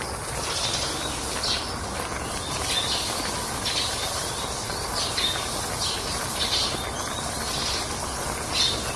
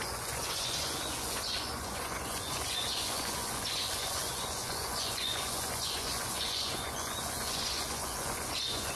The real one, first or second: first